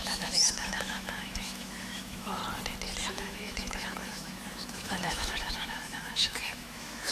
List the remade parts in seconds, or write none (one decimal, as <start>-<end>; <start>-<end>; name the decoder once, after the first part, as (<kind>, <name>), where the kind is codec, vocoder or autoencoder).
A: 0.0-2.4 (autoencoder, DAC-VAE); 3.1-7.1